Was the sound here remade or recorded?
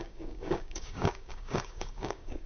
remade